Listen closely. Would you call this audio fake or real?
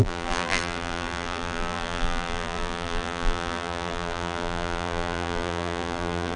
fake